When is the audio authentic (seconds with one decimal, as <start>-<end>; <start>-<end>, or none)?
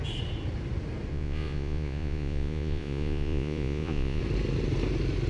0.0-1.1; 4.2-5.3